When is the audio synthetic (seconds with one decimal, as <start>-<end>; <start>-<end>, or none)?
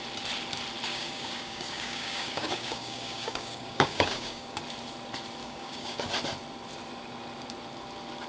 0.9-4.6; 5.4-6.0